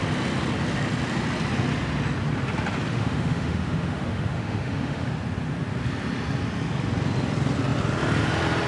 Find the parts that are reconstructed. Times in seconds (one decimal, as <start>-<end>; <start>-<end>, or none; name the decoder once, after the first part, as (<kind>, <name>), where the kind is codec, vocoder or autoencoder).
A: 2.9-5.1 (autoencoder, DAC-VAE)

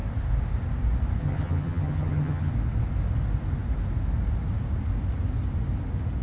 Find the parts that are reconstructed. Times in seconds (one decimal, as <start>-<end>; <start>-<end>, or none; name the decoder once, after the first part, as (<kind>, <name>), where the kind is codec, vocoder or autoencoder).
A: 1.2-2.5 (vocoder, HiFi-GAN)

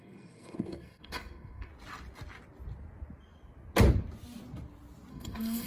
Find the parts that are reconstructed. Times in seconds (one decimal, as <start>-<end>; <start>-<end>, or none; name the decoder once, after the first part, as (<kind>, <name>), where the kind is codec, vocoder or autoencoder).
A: 0.0-1.7 (codec, SNAC); 5.1-5.7

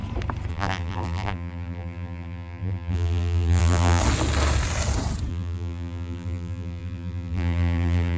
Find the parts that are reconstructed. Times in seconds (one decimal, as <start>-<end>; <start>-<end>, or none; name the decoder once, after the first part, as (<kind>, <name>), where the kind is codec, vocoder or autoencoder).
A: 0.5-4.0 (vocoder, BigVGAN v2); 5.3-8.2

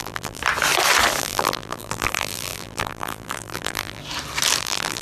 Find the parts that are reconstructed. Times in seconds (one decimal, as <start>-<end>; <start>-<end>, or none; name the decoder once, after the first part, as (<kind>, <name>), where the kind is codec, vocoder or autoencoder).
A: 0.0-0.4 (vocoder, BigVGAN v2); 1.2-4.0; 4.6-5.0